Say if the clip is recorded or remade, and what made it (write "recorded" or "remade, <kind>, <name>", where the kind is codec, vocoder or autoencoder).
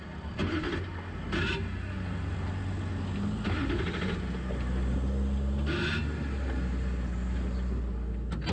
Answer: recorded